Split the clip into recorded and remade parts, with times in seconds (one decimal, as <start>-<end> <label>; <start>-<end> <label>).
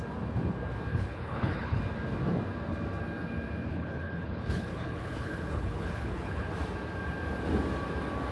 0.0-0.9 recorded; 0.9-1.8 remade; 1.8-3.7 recorded; 3.7-6.5 remade; 6.5-8.3 recorded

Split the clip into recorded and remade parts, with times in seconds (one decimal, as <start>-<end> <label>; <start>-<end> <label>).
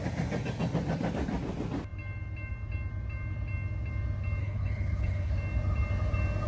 0.0-4.4 recorded; 4.4-5.3 remade; 5.3-6.5 recorded